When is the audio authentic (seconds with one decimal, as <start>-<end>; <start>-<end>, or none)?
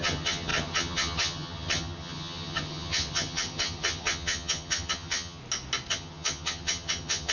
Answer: 5.4-5.9